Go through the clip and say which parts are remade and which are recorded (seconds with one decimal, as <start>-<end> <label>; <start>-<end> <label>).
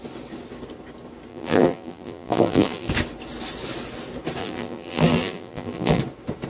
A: 0.0-1.3 recorded; 1.3-2.9 remade; 2.9-4.4 recorded; 4.4-6.0 remade; 6.0-6.5 recorded